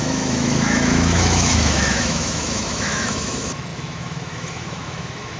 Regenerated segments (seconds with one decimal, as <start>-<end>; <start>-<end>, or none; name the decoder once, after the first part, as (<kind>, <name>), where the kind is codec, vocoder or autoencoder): 0.0-5.4 (autoencoder, DAC-VAE)